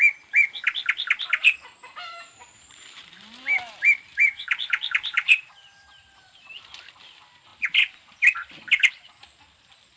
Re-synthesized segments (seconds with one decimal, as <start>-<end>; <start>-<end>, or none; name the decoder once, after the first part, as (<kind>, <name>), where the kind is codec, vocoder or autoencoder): 1.8-6.4 (vocoder, BigVGAN v2)